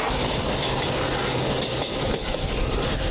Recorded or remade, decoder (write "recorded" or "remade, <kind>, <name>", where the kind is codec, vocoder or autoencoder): recorded